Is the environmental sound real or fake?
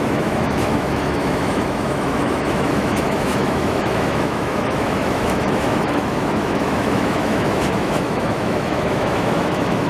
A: fake